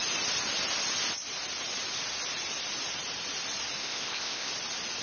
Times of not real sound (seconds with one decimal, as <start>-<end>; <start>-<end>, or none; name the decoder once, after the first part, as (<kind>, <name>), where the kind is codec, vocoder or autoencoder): 3.8-4.5 (codec, ZipCodec)